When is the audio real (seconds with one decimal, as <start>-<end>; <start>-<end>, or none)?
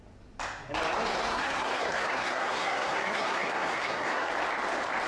0.0-1.2; 4.3-5.1